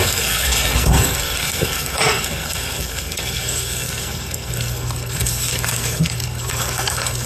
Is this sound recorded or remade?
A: remade